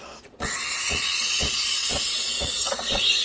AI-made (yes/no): yes